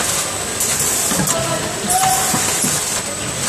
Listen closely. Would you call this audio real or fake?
real